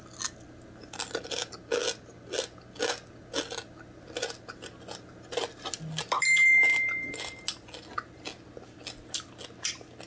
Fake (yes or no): no